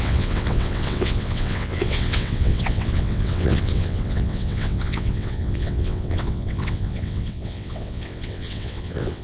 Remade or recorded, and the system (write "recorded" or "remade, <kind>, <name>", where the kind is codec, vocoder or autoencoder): remade, vocoder, WaveNeXt